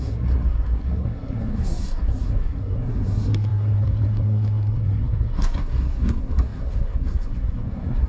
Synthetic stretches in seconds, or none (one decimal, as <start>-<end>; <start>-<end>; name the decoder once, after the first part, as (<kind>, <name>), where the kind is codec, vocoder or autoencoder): 0.0-8.1 (codec, SNAC)